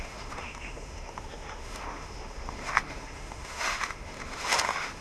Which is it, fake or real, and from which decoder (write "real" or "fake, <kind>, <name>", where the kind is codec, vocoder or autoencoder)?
fake, autoencoder, DAC-VAE